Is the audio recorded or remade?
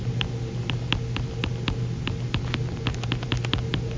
recorded